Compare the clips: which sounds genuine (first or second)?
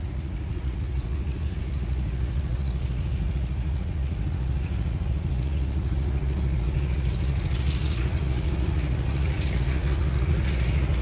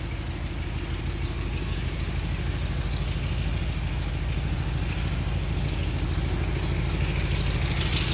second